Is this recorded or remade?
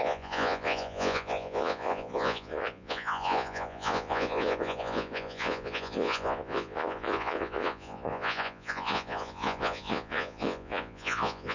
remade